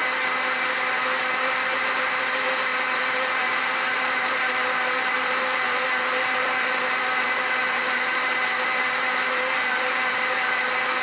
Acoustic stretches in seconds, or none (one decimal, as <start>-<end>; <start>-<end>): 0.0-1.2